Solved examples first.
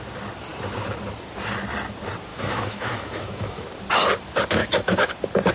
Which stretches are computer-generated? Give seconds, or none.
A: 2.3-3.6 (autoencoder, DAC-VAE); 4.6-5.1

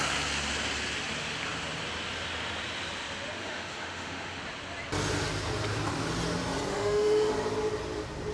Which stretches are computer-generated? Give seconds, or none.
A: 3.4-4.4 (autoencoder, DAC-VAE); 6.7-7.3

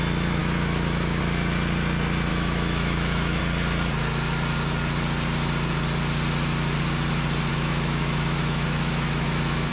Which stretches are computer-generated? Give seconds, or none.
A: 0.4-1.2 (autoencoder, DAC-VAE); 2.3-3.4; 7.5-9.7